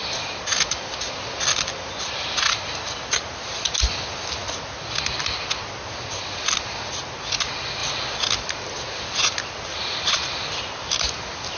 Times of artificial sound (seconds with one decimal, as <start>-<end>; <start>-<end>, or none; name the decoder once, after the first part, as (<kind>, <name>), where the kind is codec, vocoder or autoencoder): none